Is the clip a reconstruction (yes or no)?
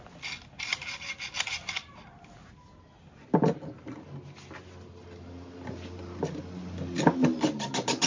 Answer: no